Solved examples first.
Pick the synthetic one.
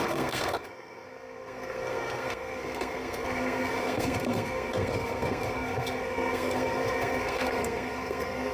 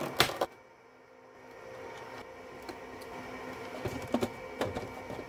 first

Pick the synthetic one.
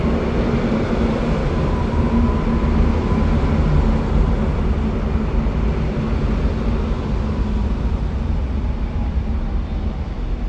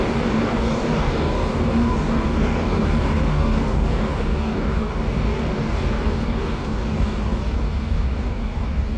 second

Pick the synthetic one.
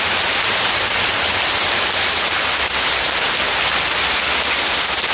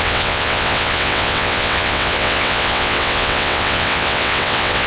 second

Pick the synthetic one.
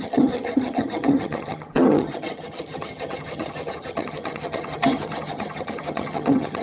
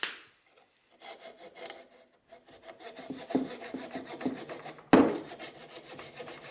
first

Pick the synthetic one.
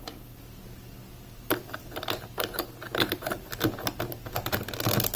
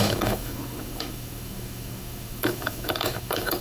second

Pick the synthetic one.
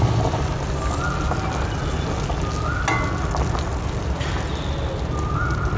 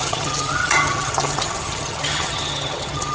second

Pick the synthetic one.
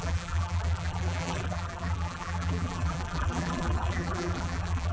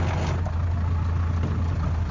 first